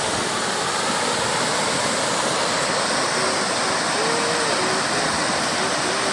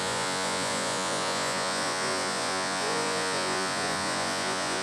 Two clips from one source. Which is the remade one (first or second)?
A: second